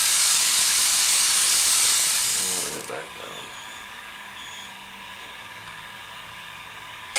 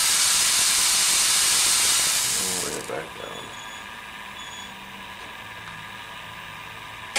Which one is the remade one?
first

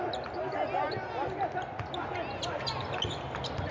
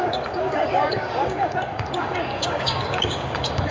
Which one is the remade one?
second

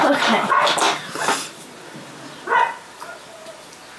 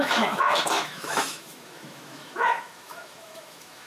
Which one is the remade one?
second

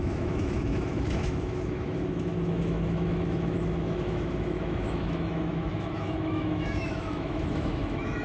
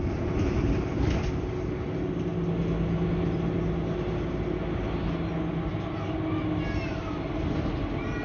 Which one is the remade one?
first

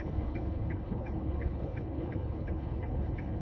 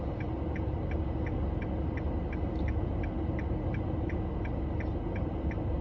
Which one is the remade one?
first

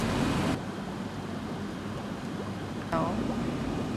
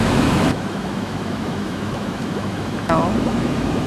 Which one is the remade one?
second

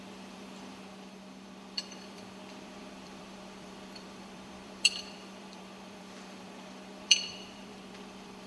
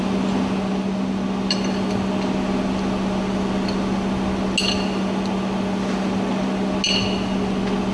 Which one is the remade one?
first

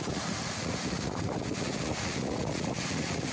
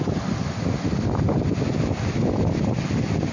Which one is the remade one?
first